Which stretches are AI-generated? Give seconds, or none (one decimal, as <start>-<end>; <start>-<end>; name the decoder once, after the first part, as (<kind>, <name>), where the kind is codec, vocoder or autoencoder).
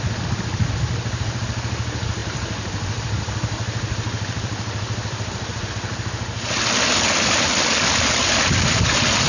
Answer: 2.2-5.7 (vocoder, BigVGAN v2)